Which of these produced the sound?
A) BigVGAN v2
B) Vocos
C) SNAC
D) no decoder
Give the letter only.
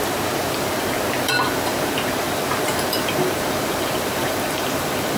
A